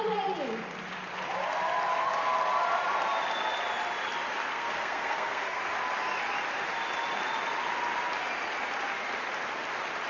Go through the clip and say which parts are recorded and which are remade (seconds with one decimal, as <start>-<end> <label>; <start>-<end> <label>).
0.0-4.5 recorded; 4.5-5.6 remade; 5.6-10.1 recorded